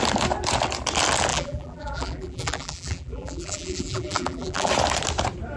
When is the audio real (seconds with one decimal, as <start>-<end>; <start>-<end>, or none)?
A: 0.0-1.3; 4.7-5.6